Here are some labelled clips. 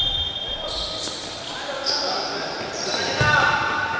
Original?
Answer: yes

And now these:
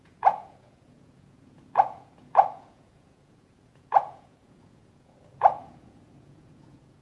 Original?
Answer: no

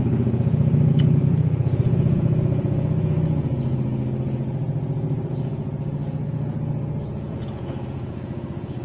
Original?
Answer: no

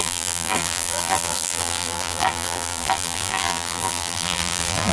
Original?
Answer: no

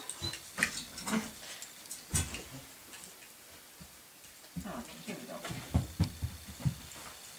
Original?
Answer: yes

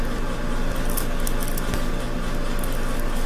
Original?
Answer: yes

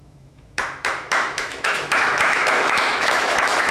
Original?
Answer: no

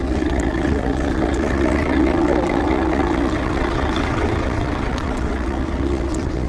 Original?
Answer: no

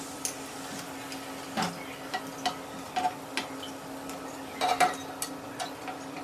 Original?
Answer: yes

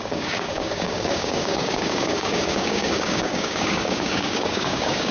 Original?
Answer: no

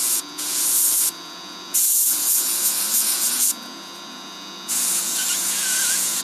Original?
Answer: no